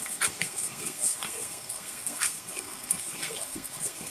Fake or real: fake